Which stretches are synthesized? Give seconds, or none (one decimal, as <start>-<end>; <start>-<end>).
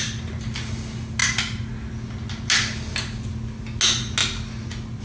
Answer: none